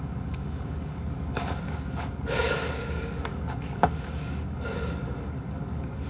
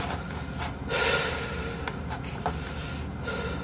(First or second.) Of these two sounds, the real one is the second